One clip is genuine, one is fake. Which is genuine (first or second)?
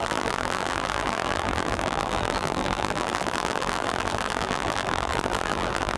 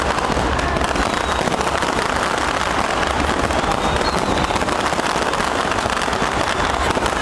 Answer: second